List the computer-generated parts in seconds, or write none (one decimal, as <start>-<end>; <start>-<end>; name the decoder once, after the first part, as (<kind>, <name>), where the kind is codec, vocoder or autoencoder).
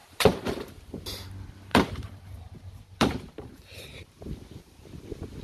0.0-0.9 (vocoder, BigVGAN v2); 1.7-4.4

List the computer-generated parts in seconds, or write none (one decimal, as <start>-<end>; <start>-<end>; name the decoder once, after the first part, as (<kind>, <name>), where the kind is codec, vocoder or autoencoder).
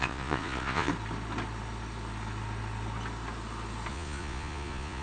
0.0-0.9 (vocoder, Vocos); 3.9-5.0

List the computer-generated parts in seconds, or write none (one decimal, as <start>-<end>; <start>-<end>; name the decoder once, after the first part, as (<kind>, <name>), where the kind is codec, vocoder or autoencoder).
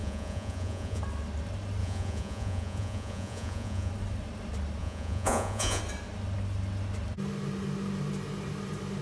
0.0-1.0 (vocoder, Vocos); 1.8-3.9; 4.8-5.8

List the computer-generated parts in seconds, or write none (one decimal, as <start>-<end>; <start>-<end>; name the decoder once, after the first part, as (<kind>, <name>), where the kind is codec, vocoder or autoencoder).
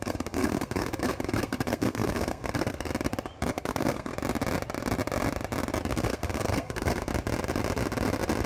0.0-2.9 (codec, SNAC); 3.5-4.1; 5.9-7.1